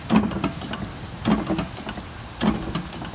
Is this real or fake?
real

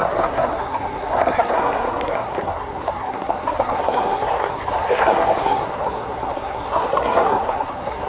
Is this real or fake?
fake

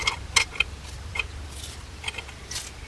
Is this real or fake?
real